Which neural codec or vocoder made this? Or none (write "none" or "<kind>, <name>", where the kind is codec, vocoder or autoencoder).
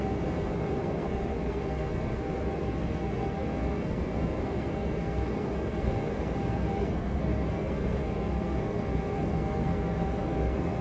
codec, SNAC